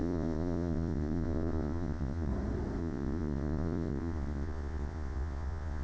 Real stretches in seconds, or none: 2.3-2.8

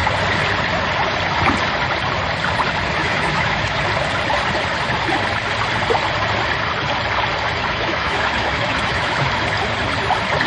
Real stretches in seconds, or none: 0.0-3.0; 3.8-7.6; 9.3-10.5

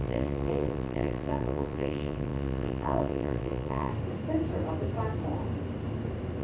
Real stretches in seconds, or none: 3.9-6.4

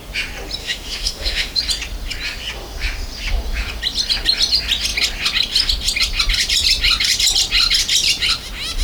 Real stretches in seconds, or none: 0.0-0.6; 1.6-8.8

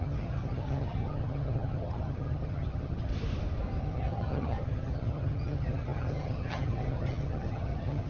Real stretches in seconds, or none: 3.1-3.8

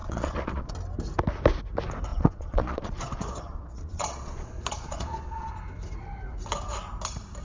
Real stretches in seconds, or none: 0.7-2.1; 5.5-7.4

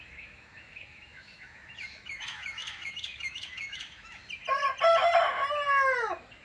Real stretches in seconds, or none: 4.2-6.4